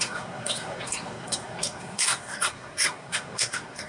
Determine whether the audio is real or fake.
fake